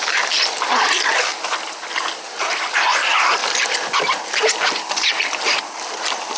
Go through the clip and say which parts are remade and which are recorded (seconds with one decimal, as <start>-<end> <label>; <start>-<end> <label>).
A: 0.0-6.4 recorded